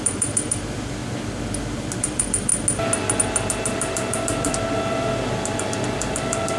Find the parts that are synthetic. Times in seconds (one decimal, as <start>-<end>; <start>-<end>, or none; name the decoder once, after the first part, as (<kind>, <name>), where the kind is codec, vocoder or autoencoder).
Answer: 0.0-1.0 (vocoder, BigVGAN v2); 2.0-2.5; 3.2-6.6